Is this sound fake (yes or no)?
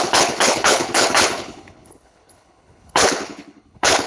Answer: yes